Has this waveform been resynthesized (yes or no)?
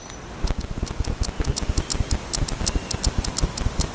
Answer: no